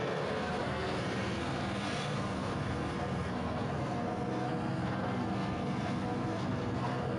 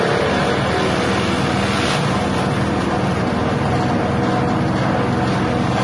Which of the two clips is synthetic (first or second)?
first